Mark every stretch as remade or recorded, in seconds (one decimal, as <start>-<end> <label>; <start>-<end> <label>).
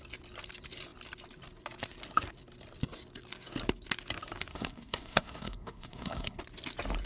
0.0-4.5 recorded; 4.5-6.4 remade; 6.4-7.1 recorded